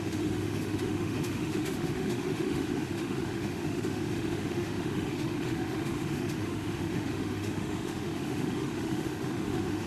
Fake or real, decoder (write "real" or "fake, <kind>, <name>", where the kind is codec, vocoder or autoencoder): fake, autoencoder, DAC-VAE